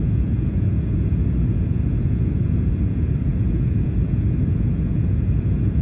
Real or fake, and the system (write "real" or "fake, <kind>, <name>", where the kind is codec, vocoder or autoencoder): fake, vocoder, Vocos